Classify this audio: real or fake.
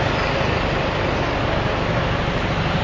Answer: real